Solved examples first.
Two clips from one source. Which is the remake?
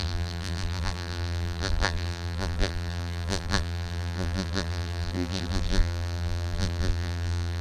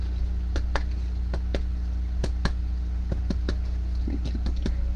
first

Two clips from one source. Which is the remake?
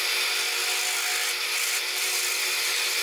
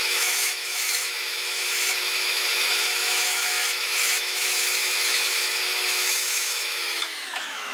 second